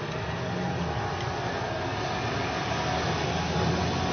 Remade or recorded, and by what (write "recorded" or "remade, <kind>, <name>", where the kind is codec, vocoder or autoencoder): recorded